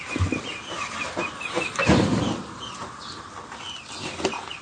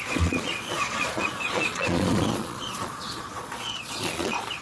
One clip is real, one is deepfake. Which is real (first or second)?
first